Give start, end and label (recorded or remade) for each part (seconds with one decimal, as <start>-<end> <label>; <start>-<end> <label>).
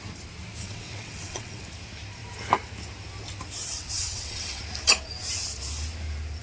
0.0-0.6 recorded; 0.6-1.6 remade; 1.6-3.6 recorded; 3.6-4.6 remade; 4.6-6.4 recorded